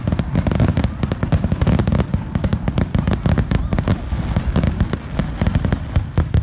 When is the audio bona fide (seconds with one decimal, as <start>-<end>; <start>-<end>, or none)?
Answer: 0.0-6.4